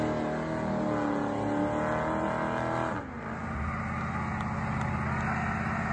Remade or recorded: recorded